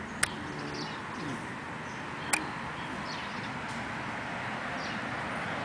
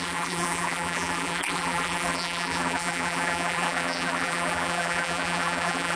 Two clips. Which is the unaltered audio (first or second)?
first